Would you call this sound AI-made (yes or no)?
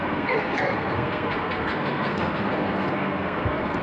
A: yes